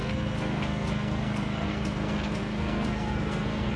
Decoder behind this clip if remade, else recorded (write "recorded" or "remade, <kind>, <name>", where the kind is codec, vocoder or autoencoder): remade, codec, SNAC